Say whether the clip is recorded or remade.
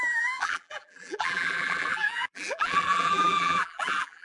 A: remade